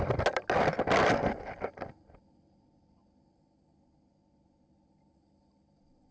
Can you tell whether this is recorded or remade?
recorded